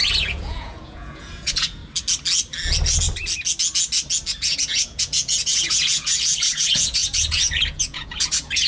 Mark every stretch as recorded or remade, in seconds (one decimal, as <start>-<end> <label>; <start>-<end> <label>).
0.0-1.8 remade; 1.8-4.3 recorded; 4.3-8.7 remade